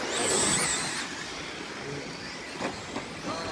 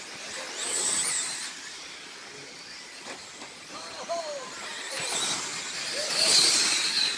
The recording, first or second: first